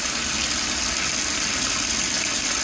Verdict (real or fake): real